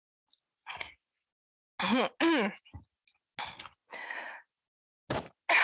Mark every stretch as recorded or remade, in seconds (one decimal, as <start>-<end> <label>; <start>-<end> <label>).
0.0-5.6 recorded